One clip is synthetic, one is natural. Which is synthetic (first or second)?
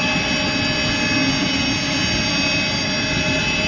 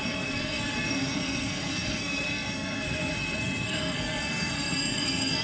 second